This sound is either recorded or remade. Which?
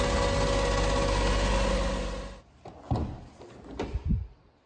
recorded